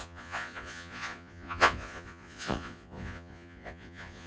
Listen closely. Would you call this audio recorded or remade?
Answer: remade